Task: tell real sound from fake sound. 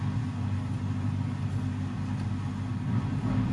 real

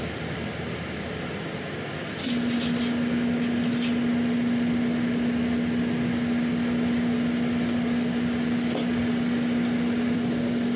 real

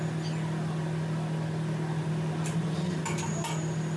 real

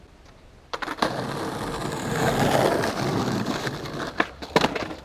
fake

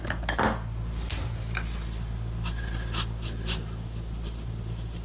real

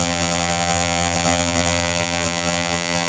fake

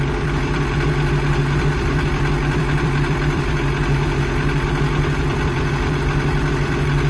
fake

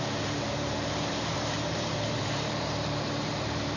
fake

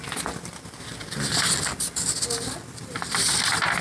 real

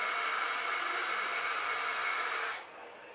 real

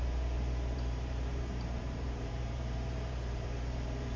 fake